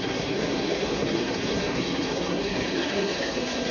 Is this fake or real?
fake